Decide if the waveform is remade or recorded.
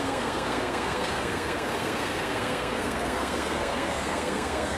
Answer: remade